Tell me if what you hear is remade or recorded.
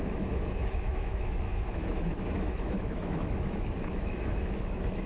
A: remade